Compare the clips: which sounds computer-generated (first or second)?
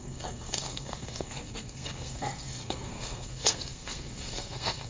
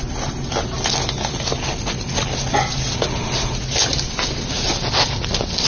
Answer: first